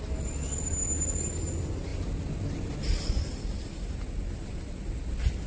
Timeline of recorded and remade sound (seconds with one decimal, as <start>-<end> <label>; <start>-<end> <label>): 0.0-5.5 recorded